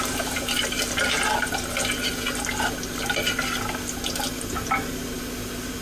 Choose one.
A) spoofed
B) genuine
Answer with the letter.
B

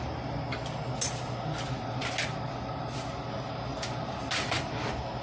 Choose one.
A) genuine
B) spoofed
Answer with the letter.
A